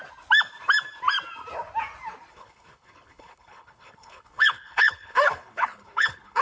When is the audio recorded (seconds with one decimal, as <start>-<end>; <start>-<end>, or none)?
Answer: 0.0-2.3